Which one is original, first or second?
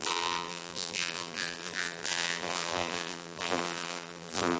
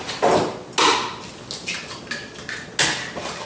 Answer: second